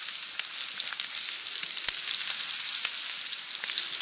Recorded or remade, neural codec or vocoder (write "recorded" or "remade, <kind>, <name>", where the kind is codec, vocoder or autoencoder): recorded